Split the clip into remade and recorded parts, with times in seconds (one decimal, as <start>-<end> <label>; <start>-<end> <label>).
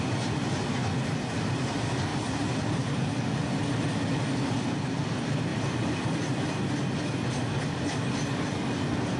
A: 0.0-2.1 recorded; 2.1-3.6 remade; 3.6-5.5 recorded; 5.5-6.3 remade; 6.3-9.2 recorded